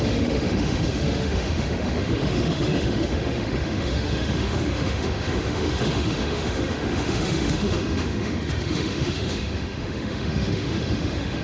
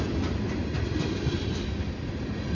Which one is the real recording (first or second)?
second